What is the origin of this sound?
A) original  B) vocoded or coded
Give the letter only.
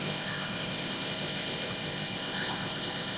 B